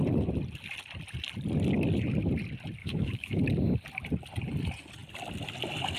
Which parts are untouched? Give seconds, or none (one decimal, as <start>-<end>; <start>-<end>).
0.0-2.8; 3.4-6.0